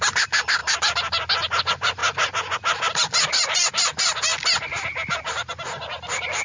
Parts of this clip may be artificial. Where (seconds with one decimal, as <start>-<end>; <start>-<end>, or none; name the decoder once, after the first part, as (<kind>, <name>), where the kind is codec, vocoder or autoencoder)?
0.0-0.6 (vocoder, BigVGAN v2); 1.6-2.0; 3.3-4.3; 5.1-6.4